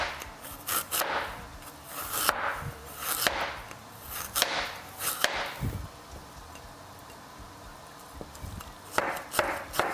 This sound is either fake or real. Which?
real